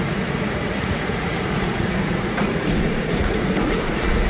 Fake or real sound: fake